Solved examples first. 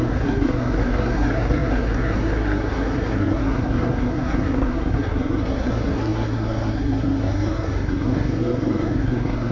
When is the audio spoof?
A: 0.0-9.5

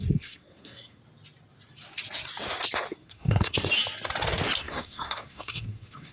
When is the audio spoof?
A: 0.0-1.0; 2.9-3.7; 4.6-6.1

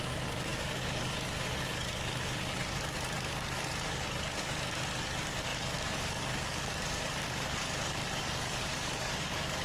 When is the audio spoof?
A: 0.0-9.6

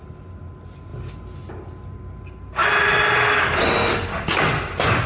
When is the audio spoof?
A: none

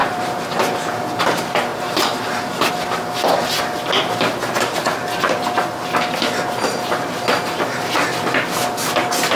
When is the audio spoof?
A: 0.0-1.0; 1.7-2.7